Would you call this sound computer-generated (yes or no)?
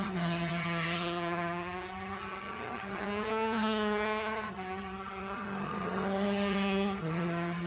yes